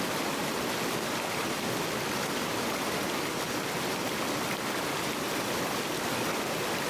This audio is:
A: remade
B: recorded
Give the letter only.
B